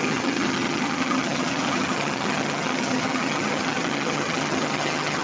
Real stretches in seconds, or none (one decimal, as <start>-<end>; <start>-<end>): none